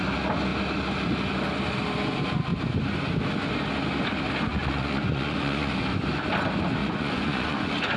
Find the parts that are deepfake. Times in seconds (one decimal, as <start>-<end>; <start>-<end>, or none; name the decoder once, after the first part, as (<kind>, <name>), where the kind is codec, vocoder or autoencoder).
4.5-5.7 (vocoder, Vocos); 6.8-8.0